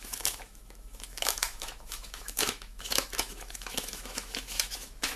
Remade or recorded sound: remade